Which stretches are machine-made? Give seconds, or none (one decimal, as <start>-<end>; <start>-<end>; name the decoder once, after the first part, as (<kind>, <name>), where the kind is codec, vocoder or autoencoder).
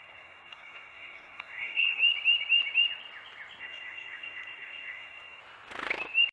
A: 0.0-2.0 (codec, SNAC); 3.6-5.4